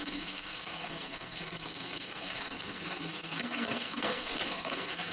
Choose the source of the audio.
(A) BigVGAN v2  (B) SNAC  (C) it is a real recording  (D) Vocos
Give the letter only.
B